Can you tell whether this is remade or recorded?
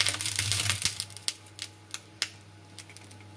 recorded